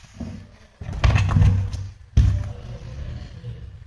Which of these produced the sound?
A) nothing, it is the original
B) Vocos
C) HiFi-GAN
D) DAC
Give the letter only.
A